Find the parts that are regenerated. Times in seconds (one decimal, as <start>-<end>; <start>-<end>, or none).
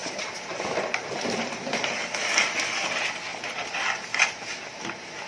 0.0-2.0; 3.3-4.7